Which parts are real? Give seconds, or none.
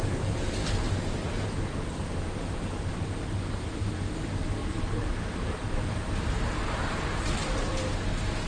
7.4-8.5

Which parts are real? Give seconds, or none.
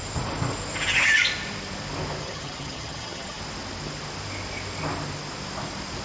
0.0-2.2; 3.4-6.0